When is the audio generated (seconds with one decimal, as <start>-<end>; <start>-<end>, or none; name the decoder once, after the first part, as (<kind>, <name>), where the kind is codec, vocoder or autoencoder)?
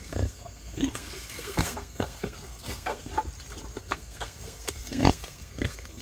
0.0-3.1 (codec, SNAC); 3.8-6.0